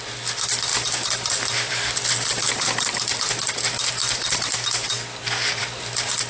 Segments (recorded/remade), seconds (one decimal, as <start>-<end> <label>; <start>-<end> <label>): 0.0-6.3 recorded